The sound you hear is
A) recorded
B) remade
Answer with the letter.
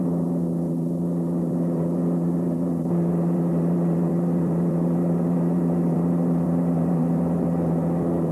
B